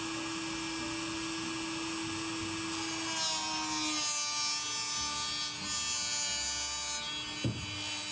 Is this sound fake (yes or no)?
no